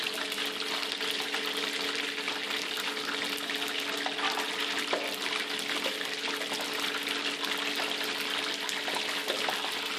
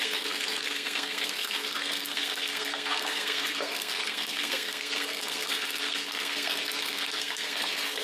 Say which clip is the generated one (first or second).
second